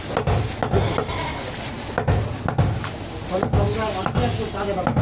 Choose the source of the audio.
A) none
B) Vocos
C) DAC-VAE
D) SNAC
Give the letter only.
A